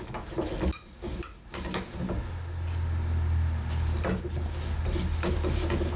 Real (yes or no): yes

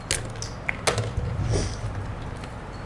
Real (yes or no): yes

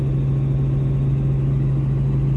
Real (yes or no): yes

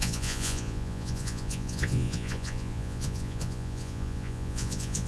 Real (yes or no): no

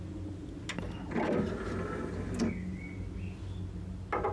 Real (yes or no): yes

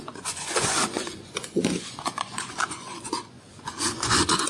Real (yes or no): no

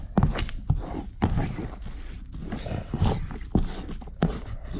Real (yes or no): yes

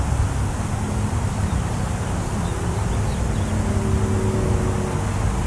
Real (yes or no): yes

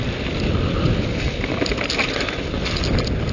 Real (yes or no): yes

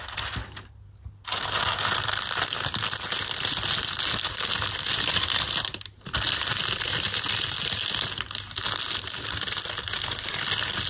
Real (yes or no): yes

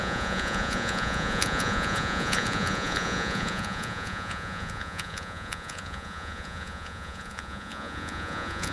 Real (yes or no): no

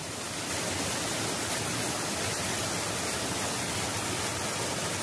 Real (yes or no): yes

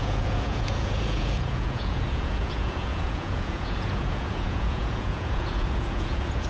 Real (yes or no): no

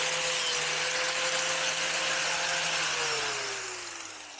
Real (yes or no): yes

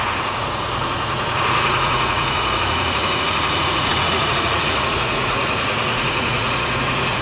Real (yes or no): no